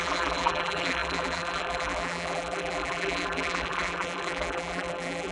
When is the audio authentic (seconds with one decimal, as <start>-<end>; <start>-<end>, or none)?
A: none